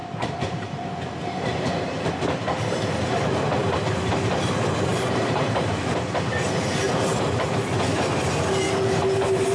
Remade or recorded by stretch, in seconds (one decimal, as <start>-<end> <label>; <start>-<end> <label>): 0.0-2.1 remade; 2.1-4.9 recorded; 4.9-5.7 remade; 5.7-9.5 recorded